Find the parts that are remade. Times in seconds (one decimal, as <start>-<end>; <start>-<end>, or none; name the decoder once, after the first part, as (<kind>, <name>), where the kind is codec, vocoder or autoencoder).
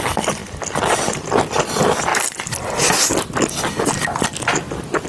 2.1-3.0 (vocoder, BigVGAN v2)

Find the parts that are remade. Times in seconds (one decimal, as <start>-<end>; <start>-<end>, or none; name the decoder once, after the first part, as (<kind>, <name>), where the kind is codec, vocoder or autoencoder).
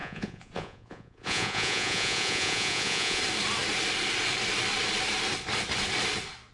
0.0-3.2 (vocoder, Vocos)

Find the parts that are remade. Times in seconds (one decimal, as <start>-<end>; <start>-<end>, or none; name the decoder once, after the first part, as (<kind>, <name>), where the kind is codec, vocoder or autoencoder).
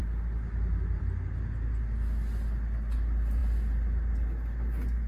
none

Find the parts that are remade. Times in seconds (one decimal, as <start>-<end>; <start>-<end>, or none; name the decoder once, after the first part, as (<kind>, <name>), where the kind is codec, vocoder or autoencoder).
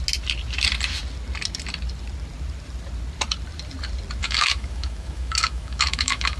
4.2-6.4 (autoencoder, DAC-VAE)